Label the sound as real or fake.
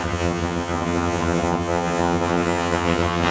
fake